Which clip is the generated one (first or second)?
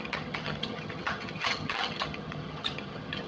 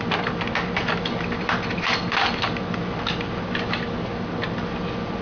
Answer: first